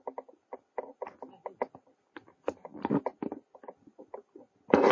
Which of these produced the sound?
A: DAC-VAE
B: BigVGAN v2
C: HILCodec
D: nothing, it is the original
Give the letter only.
D